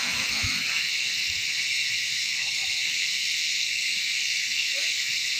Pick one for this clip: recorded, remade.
remade